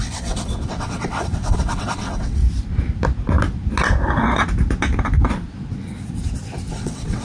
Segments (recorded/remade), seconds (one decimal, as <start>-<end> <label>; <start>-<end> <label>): 0.0-2.4 remade; 2.4-6.7 recorded; 6.7-7.2 remade